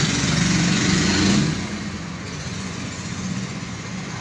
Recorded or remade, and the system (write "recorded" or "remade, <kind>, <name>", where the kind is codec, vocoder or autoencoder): remade, vocoder, Vocos